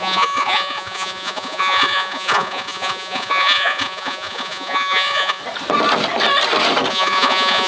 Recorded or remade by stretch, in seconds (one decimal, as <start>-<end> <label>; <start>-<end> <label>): 0.0-5.4 remade; 5.4-6.9 recorded; 6.9-7.7 remade